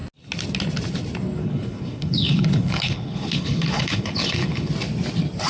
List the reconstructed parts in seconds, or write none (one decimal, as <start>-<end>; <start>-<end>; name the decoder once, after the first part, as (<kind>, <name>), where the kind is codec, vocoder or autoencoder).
1.4-4.7 (codec, HILCodec)

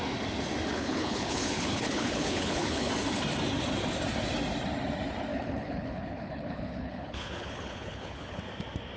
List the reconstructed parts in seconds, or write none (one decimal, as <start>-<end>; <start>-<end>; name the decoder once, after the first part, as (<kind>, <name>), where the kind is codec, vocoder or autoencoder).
0.7-2.9 (codec, HILCodec); 5.3-8.4